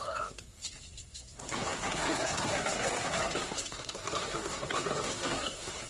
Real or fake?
fake